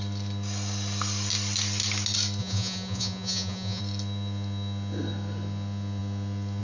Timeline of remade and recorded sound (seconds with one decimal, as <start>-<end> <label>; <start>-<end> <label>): 0.0-2.4 recorded; 2.4-3.8 remade; 3.8-6.6 recorded